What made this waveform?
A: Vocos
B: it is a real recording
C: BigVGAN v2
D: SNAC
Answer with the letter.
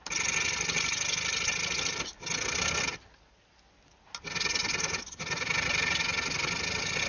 B